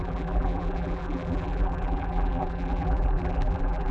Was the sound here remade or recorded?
remade